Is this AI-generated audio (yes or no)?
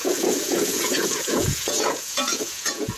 yes